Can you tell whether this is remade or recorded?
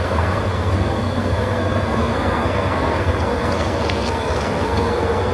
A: remade